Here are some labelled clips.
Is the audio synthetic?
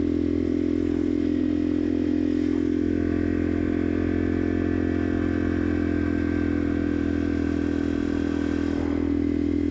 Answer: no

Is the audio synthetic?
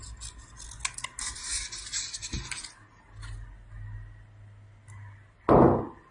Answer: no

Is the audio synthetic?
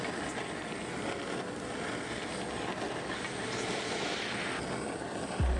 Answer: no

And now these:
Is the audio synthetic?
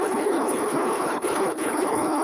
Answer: yes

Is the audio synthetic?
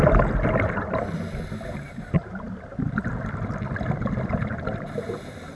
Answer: no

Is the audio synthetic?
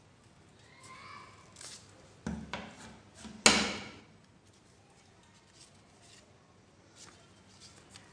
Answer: no